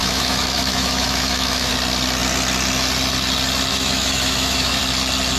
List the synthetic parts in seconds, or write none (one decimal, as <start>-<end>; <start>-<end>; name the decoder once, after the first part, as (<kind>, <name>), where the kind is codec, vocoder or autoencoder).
0.0-1.7 (autoencoder, DAC-VAE); 3.7-4.8